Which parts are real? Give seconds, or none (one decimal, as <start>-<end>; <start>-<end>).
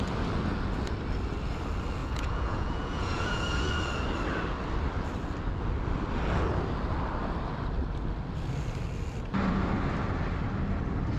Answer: 0.0-2.0; 3.7-11.2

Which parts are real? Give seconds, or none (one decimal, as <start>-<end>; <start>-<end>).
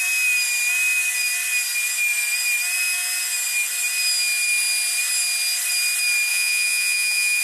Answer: 0.0-6.3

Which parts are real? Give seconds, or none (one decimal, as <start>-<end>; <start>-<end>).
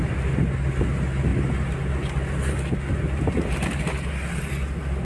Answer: 0.0-5.0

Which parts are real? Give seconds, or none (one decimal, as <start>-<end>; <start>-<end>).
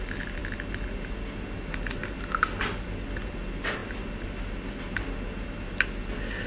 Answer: 0.0-6.5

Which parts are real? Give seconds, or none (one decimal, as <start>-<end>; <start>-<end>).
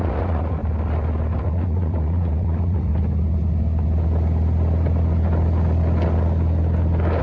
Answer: 0.6-1.4; 2.9-7.2